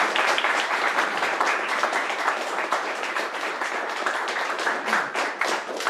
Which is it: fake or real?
fake